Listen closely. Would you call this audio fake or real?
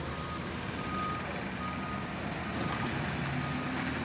real